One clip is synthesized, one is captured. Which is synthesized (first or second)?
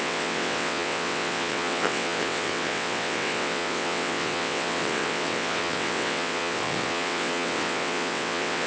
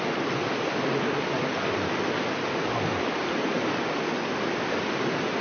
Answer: first